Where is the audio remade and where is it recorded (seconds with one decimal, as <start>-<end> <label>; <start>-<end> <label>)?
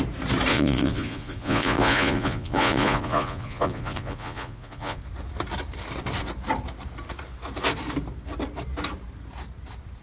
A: 0.0-0.5 recorded; 0.5-5.0 remade; 5.0-10.0 recorded